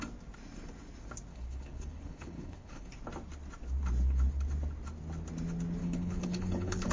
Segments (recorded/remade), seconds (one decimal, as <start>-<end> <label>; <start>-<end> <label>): 0.0-1.3 recorded; 1.3-2.9 remade; 2.9-5.8 recorded; 5.8-6.9 remade